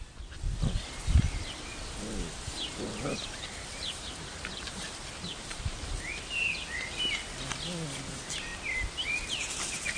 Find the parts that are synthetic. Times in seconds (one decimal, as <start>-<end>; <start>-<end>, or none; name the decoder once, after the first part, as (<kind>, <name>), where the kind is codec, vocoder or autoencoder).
3.1-6.3 (vocoder, BigVGAN v2)

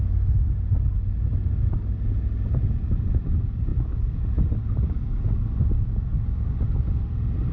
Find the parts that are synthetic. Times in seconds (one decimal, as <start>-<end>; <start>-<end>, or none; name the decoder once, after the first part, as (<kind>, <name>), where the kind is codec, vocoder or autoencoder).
3.7-4.9 (vocoder, BigVGAN v2); 6.1-7.5

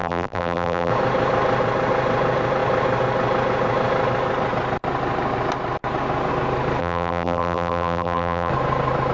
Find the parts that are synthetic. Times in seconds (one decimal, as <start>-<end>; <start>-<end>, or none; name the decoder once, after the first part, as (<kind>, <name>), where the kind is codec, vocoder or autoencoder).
0.0-0.9 (vocoder, BigVGAN v2); 6.8-8.5

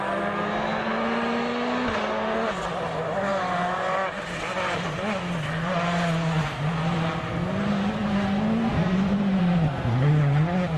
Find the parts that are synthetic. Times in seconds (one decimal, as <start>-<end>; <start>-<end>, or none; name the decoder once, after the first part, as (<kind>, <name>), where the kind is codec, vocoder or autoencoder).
8.7-9.4 (vocoder, BigVGAN v2)